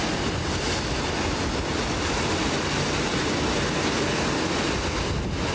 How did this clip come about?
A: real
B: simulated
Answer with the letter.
A